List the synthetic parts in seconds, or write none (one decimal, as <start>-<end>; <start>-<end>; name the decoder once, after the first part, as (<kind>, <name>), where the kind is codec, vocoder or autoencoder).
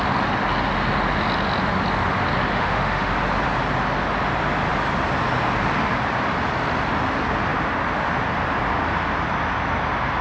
2.5-3.1 (autoencoder, DAC-VAE)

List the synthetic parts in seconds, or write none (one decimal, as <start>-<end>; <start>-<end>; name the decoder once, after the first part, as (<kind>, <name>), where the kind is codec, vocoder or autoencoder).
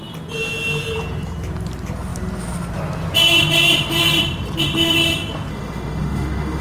5.5-6.6 (autoencoder, DAC-VAE)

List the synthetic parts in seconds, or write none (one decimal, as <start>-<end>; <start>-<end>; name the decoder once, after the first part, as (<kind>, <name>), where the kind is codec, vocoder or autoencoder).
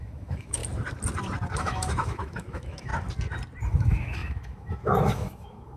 0.0-0.6 (autoencoder, DAC-VAE); 1.6-2.9; 3.6-5.8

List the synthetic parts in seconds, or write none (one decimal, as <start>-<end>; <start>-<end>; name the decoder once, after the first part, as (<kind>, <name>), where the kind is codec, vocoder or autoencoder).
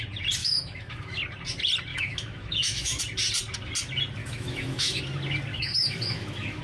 0.4-1.2 (autoencoder, DAC-VAE); 1.9-3.0; 4.2-5.0; 5.5-6.6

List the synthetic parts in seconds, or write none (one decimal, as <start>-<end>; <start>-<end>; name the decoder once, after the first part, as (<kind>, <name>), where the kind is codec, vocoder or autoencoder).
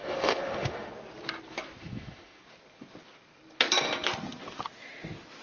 0.0-0.9 (autoencoder, DAC-VAE); 1.8-2.4